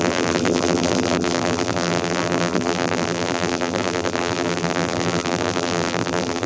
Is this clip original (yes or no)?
no